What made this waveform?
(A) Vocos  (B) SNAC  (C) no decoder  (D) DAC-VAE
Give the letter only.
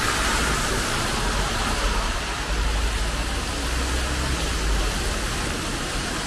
C